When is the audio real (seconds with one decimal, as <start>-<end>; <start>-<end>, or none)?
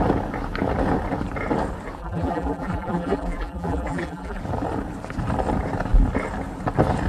0.0-2.0; 4.4-7.1